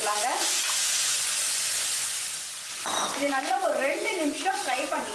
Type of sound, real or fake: fake